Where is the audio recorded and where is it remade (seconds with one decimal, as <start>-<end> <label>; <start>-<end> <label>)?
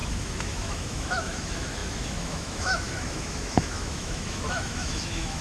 0.0-5.4 remade